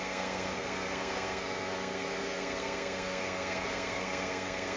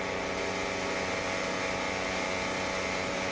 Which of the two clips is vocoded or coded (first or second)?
first